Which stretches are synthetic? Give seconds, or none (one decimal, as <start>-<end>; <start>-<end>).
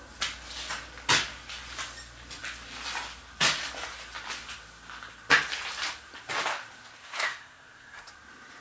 7.0-8.1